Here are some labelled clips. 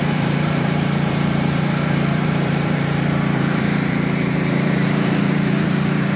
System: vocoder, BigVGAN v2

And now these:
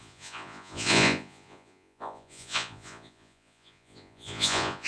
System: vocoder, Vocos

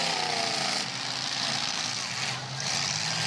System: none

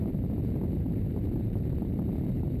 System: vocoder, BigVGAN v2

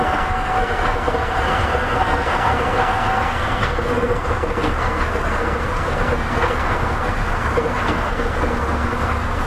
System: codec, SNAC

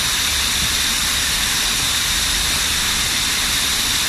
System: none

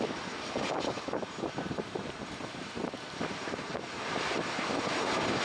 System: vocoder, BigVGAN v2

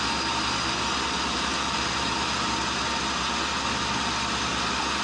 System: none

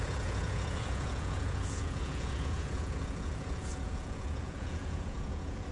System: vocoder, Vocos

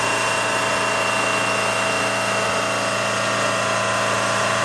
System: none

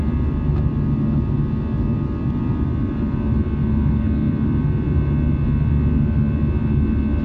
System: none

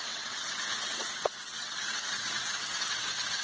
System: vocoder, WaveNeXt